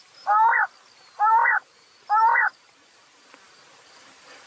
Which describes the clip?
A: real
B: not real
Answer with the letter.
A